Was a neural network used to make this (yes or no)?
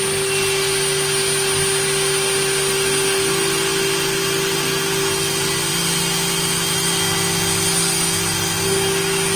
no